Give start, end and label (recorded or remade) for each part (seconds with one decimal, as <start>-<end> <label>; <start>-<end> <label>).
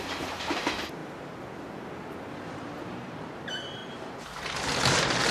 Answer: 0.0-1.0 remade; 1.0-2.5 recorded; 2.5-3.8 remade; 3.8-5.3 recorded